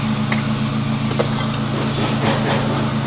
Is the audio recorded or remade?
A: recorded